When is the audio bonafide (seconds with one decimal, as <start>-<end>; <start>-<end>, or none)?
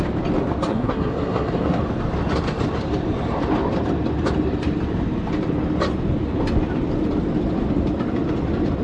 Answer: 0.0-0.7; 1.8-8.8